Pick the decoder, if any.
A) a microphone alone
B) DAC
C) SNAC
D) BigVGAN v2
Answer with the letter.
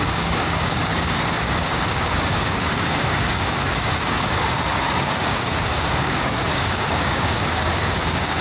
B